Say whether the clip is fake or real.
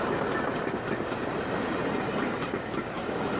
real